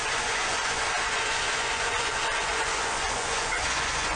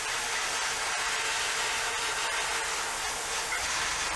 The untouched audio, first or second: second